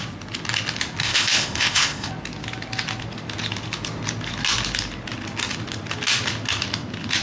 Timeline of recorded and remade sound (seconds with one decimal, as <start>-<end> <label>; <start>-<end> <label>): 0.0-1.0 recorded; 1.0-2.1 remade; 2.1-7.2 recorded